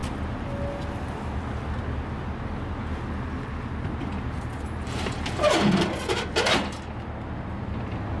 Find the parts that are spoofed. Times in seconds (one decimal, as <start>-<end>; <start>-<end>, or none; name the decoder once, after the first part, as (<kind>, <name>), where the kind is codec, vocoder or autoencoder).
none